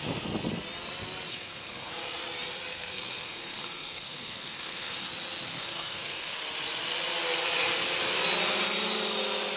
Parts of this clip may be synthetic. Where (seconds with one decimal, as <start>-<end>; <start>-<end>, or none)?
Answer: 1.3-1.9; 2.7-4.9; 5.5-6.4